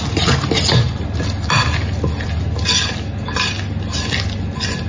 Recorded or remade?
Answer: recorded